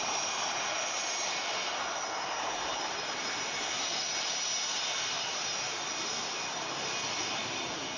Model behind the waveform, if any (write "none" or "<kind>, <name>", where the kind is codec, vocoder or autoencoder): none